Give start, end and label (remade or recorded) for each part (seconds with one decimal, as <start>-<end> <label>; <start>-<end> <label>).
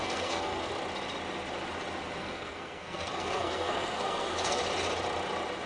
0.0-0.7 remade; 0.7-2.2 recorded; 2.2-4.6 remade; 4.6-5.7 recorded